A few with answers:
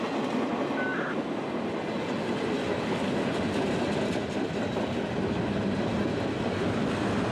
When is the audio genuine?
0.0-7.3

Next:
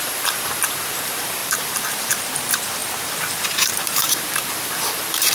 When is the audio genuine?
none

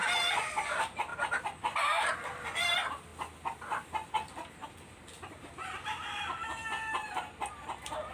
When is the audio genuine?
3.1-5.3; 6.6-7.1

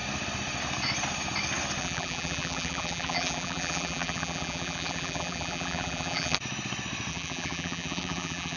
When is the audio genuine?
0.0-1.8; 6.4-7.1